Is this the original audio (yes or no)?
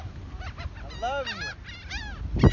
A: yes